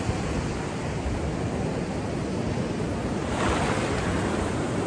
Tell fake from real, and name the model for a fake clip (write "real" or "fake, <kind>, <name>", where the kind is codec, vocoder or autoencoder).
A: real